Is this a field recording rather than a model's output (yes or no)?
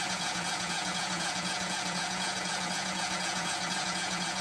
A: no